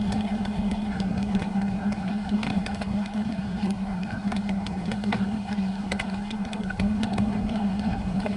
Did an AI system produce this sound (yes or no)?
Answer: yes